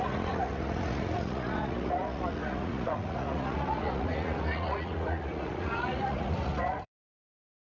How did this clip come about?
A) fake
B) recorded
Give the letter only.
A